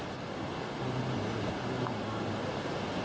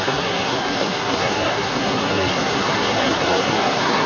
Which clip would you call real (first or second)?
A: first